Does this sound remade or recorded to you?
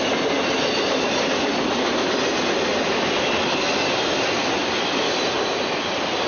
remade